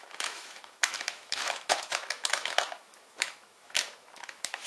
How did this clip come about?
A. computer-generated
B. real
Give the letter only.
A